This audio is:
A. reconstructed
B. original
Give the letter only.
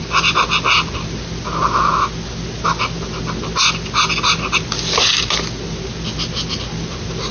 B